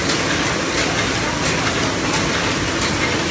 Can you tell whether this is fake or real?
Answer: real